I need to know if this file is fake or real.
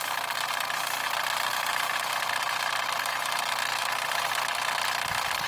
real